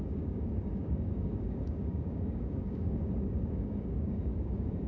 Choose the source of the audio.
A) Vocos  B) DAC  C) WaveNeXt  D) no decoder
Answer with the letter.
B